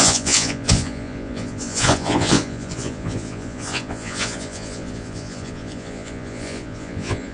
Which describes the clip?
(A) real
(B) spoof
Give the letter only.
B